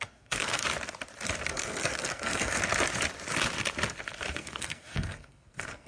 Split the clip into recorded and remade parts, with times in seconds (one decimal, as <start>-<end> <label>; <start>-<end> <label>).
0.0-0.6 remade; 0.6-1.5 recorded; 1.5-2.6 remade; 2.6-4.3 recorded; 4.3-5.9 remade